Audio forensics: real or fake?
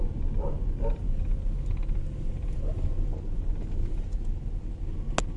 real